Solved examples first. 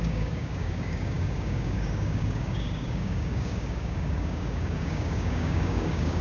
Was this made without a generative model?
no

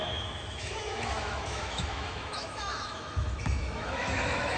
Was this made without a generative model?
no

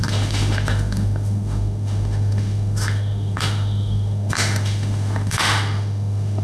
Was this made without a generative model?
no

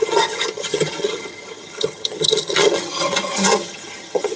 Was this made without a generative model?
no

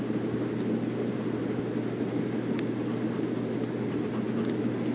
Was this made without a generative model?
yes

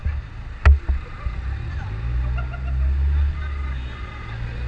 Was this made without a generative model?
yes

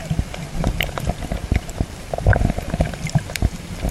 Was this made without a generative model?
yes